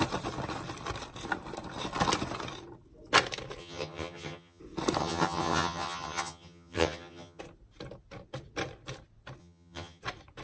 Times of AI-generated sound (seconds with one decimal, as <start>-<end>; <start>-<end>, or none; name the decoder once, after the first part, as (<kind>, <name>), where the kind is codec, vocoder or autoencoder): 3.6-4.6 (vocoder, HiFi-GAN); 5.0-7.4; 9.4-10.0